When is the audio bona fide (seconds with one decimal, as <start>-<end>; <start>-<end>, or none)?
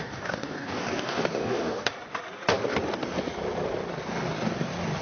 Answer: 1.9-5.0